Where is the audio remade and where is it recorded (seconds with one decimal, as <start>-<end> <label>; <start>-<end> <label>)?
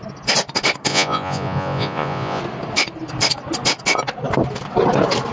0.0-0.9 recorded; 0.9-2.4 remade; 2.4-5.3 recorded